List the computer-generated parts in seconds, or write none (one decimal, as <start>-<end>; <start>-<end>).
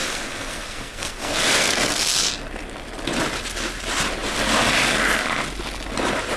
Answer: 0.0-2.3